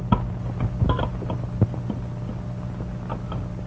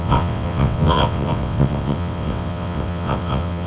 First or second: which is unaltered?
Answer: first